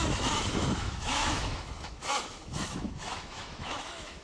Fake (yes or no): yes